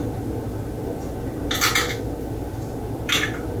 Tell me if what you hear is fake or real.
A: real